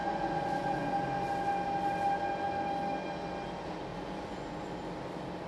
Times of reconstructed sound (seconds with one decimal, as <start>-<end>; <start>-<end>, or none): 0.0-0.9; 3.9-4.7